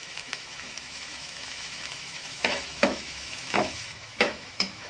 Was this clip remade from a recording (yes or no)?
yes